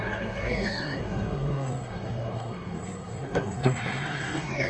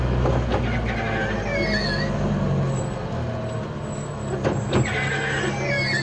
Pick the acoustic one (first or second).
second